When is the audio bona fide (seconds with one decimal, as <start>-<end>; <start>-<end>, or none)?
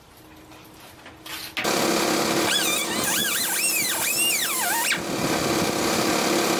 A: 0.0-6.6